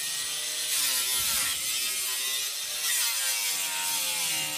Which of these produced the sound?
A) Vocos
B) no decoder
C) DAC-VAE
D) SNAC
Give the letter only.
B